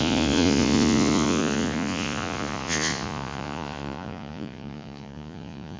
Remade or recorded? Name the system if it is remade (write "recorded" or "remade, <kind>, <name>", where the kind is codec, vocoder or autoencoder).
remade, vocoder, Vocos